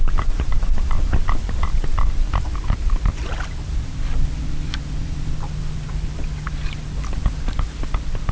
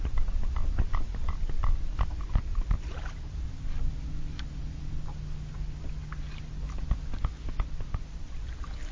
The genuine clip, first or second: second